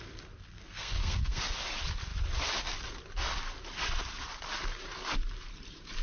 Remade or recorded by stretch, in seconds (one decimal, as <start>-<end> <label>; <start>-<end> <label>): 0.0-0.5 recorded; 0.5-1.5 remade; 1.5-6.0 recorded